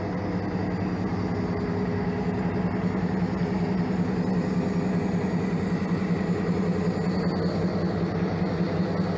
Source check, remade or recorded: recorded